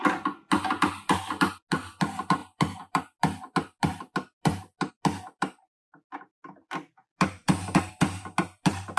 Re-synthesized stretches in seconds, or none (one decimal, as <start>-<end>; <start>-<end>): none